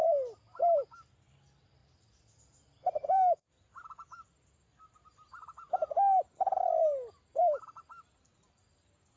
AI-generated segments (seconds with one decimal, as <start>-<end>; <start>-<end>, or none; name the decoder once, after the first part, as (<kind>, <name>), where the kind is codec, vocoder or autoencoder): 0.0-0.6 (vocoder, BigVGAN v2); 1.8-4.8